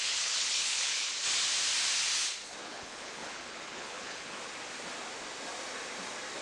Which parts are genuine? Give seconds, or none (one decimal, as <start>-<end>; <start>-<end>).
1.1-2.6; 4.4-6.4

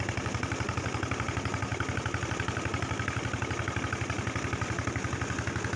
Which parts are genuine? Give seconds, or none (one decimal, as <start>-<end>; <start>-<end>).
0.0-5.8

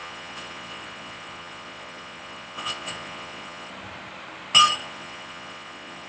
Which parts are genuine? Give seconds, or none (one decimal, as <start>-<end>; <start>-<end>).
3.7-4.8

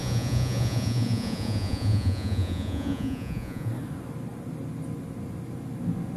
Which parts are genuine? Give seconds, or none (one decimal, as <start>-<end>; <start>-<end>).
3.7-6.2